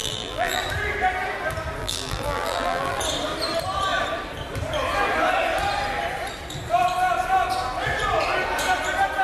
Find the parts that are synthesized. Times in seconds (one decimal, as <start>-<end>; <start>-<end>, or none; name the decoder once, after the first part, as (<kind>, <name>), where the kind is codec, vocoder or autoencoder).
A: 0.0-0.6 (vocoder, BigVGAN v2); 1.8-3.0